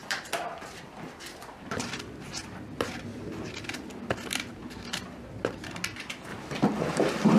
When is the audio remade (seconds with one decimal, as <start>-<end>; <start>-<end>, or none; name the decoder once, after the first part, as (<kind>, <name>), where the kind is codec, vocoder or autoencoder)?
0.0-3.3 (vocoder, BigVGAN v2); 4.6-5.4; 6.3-7.4